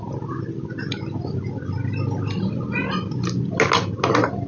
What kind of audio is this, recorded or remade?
recorded